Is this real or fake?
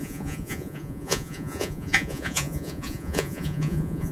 fake